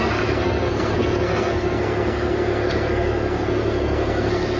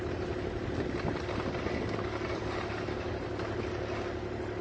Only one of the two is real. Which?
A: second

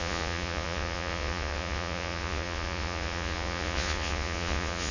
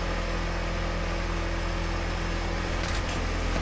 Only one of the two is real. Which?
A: second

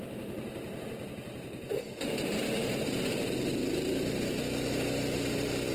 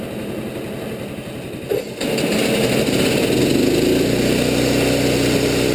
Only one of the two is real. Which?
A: second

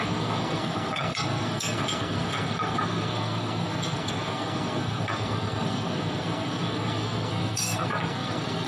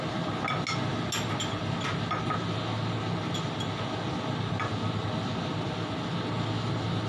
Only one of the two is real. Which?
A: second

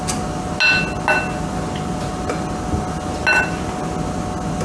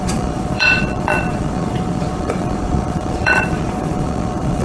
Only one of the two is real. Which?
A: first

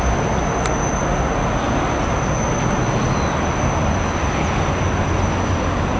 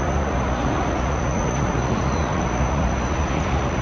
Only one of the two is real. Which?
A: first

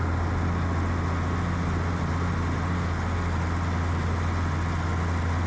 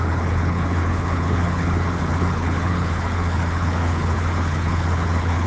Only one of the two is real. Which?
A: first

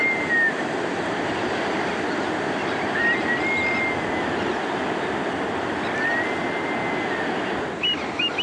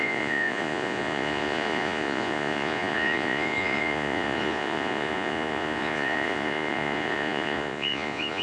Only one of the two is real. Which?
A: first